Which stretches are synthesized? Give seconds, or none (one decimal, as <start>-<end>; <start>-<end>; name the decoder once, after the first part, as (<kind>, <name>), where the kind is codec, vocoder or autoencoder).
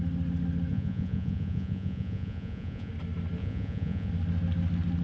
0.7-2.9 (vocoder, Vocos); 3.4-4.1